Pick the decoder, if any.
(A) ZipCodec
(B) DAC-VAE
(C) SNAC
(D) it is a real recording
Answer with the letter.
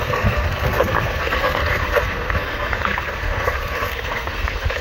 C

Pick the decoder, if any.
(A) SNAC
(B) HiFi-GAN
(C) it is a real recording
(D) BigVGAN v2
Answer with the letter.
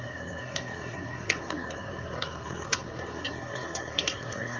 A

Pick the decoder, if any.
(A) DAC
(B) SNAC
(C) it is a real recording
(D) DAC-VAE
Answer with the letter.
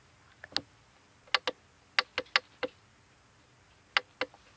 C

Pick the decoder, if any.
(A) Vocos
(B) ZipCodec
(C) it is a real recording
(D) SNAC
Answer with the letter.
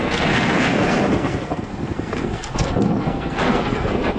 D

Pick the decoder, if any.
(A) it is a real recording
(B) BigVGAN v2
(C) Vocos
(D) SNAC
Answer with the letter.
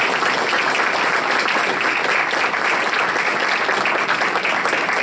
A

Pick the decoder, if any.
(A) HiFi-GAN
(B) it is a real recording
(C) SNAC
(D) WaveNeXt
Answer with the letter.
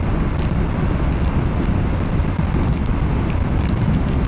B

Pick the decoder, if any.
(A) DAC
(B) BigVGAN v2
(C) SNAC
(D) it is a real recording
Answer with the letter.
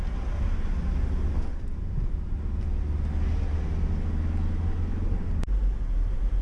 D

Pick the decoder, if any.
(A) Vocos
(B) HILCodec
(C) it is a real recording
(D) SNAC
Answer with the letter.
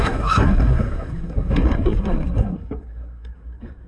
D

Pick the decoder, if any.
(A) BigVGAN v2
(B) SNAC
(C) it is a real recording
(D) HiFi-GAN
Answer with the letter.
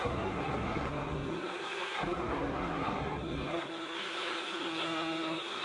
B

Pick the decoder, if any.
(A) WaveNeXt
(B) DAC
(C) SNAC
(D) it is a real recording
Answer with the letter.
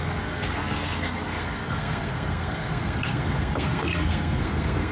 C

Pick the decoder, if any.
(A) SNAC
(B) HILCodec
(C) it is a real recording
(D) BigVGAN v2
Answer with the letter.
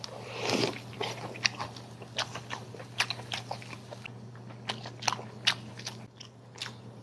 C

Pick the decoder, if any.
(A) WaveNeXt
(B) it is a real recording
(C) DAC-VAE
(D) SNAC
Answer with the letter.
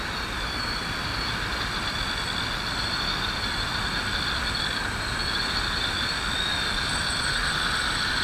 B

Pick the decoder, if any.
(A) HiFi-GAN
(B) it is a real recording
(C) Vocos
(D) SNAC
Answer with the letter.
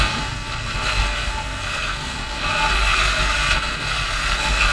D